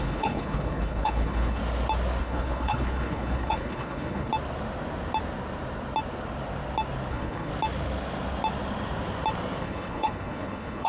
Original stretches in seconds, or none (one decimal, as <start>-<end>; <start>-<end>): 1.6-2.2; 4.3-7.1; 7.5-9.6